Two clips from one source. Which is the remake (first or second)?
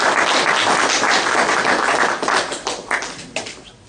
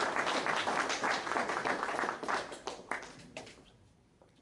second